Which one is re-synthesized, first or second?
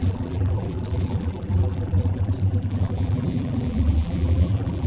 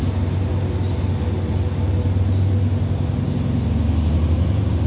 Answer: first